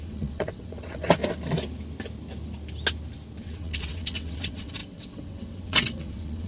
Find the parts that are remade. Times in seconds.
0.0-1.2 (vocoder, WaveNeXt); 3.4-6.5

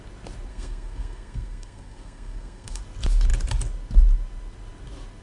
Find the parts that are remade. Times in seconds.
0.5-2.8 (codec, SNAC)

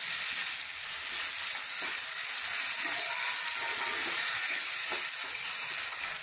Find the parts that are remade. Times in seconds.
4.0-5.0 (vocoder, BigVGAN v2)

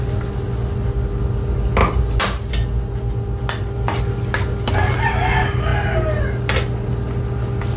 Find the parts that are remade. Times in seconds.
1.8-2.5 (vocoder, BigVGAN v2)

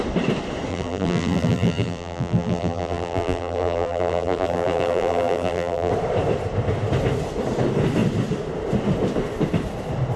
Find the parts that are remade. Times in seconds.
0.7-5.9 (vocoder, BigVGAN v2)

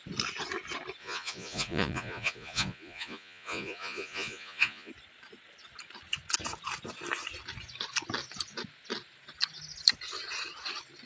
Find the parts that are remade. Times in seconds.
1.0-4.9 (vocoder, Vocos)